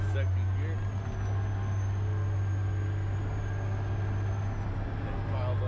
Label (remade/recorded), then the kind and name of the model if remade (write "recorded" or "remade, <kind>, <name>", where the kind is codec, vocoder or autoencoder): recorded